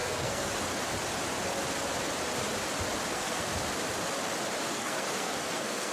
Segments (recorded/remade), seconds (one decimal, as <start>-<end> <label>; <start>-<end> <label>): 0.0-0.5 remade; 0.5-3.1 recorded; 3.1-3.5 remade; 3.5-4.7 recorded; 4.7-5.9 remade